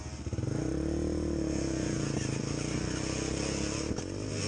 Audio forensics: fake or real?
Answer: real